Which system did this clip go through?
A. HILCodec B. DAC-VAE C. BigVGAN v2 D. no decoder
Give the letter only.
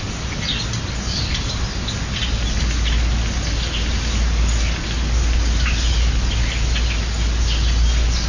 D